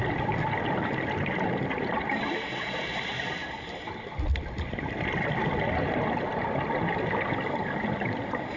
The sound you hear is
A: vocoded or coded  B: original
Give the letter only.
B